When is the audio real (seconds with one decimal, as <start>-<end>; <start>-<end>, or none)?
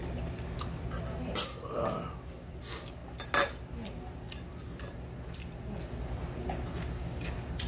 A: 0.0-7.7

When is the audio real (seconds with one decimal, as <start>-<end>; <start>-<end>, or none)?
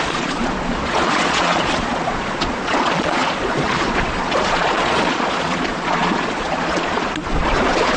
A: none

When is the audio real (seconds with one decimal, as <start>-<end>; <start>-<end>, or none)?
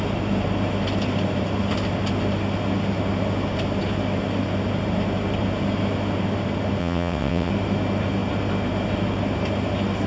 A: 0.0-6.8; 7.5-10.1